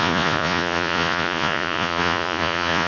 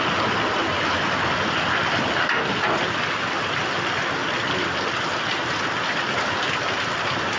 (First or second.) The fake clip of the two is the first